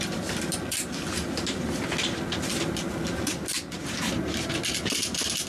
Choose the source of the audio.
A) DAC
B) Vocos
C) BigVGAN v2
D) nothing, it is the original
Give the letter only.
C